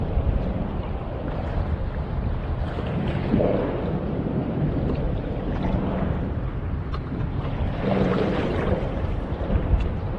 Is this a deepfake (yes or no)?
yes